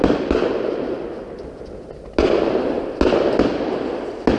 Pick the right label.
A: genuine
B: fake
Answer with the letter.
A